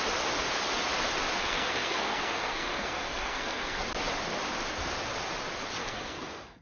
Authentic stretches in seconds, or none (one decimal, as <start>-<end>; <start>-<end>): 0.0-1.4; 3.8-5.8